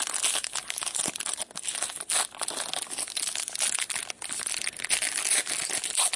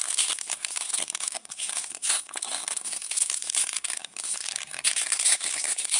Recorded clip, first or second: first